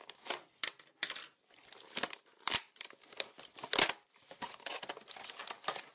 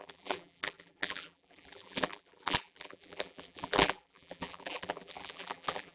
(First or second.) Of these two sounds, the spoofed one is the second